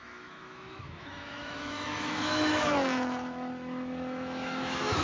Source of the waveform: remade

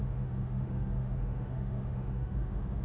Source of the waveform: remade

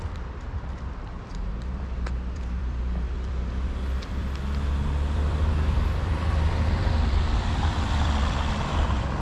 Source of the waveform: remade